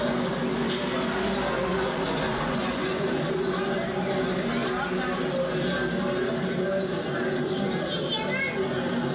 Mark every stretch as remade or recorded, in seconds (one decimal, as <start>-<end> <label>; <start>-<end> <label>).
0.0-1.7 recorded; 1.7-3.1 remade; 3.1-9.1 recorded